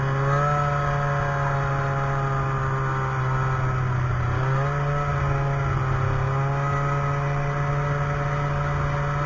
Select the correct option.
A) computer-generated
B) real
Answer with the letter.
B